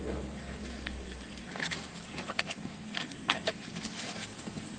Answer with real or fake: fake